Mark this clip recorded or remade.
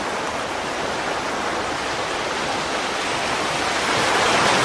recorded